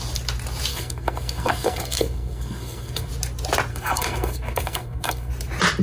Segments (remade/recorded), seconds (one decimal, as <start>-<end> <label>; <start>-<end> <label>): 0.0-0.7 recorded; 0.7-3.1 remade; 3.1-3.7 recorded; 3.7-5.3 remade; 5.3-5.8 recorded